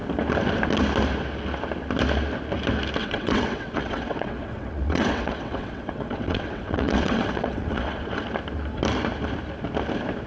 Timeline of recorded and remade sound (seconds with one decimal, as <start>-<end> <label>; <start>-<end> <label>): 0.0-3.0 recorded; 3.0-8.2 remade; 8.2-10.3 recorded